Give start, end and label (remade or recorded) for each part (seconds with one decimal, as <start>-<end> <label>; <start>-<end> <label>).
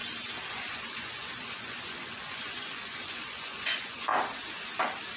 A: 0.0-0.5 recorded; 0.5-4.1 remade; 4.1-5.2 recorded